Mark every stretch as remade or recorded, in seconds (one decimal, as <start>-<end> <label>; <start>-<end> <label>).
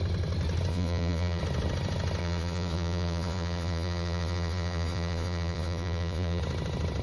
0.0-0.7 recorded; 0.7-1.4 remade; 1.4-2.2 recorded; 2.2-6.4 remade; 6.4-7.0 recorded